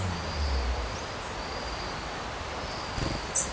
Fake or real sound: real